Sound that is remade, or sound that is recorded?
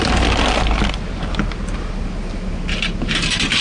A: recorded